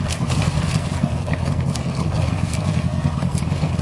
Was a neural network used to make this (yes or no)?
yes